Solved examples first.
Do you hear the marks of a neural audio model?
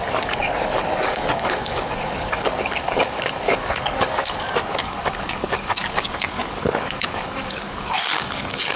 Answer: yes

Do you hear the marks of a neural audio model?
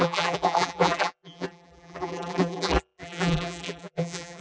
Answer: yes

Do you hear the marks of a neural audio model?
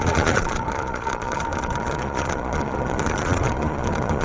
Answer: yes